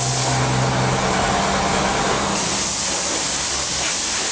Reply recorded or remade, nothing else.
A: recorded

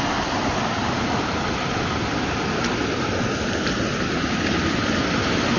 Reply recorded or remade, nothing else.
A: recorded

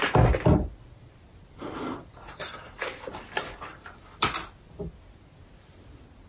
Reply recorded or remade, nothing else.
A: recorded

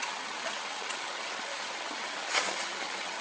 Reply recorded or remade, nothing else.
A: remade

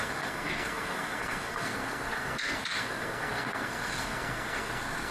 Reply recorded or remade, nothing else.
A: remade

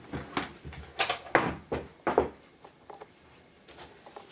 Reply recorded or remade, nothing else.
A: recorded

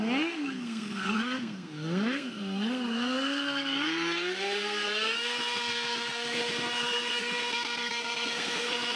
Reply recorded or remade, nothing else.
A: remade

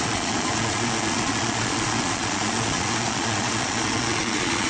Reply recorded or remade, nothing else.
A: remade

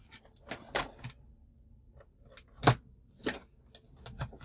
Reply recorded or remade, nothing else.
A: recorded